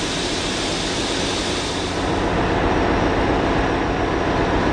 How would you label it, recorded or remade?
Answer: recorded